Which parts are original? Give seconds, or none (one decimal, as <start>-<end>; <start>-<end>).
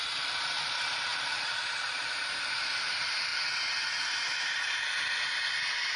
0.0-6.0